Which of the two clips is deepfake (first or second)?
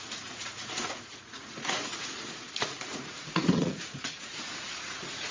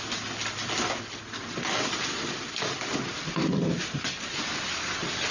first